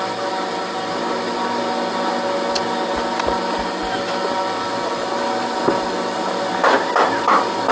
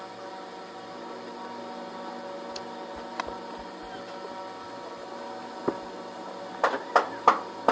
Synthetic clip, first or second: first